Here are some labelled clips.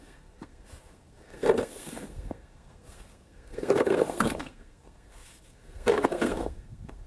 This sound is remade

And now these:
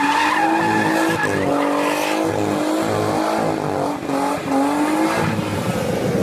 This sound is recorded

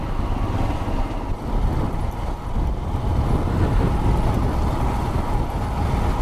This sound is recorded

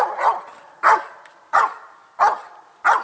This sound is recorded